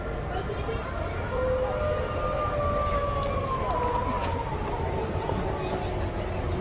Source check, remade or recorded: recorded